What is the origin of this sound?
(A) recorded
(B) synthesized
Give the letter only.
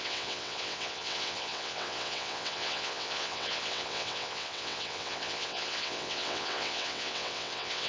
B